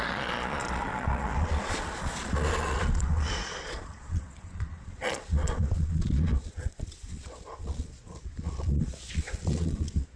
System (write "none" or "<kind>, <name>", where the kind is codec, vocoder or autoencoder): vocoder, Vocos